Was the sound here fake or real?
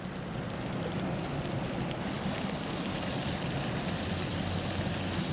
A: real